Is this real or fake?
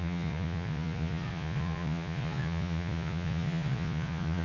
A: fake